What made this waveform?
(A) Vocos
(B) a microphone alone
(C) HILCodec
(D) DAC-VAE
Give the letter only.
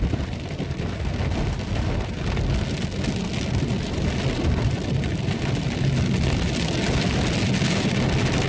B